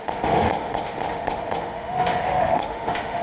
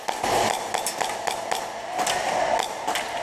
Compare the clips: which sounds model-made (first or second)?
first